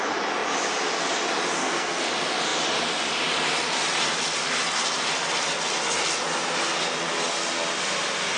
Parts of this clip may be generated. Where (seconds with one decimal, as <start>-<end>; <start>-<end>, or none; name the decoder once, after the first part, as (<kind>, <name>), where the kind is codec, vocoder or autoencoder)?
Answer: 1.6-2.1 (codec, SNAC)